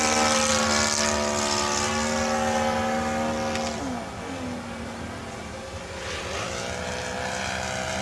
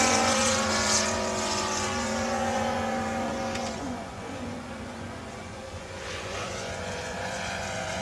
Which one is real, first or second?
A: first